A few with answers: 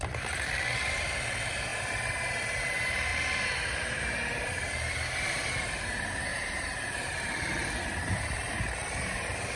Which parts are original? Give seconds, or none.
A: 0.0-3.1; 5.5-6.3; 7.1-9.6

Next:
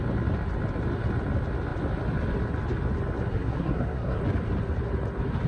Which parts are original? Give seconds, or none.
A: 0.0-3.3; 4.2-5.5